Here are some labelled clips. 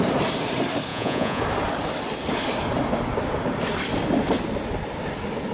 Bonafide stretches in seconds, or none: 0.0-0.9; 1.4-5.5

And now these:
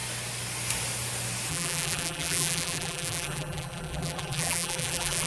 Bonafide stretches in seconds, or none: 0.0-1.5